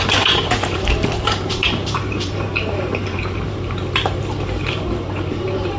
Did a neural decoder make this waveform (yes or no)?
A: yes